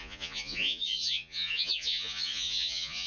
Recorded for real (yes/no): no